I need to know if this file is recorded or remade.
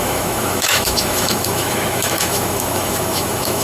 remade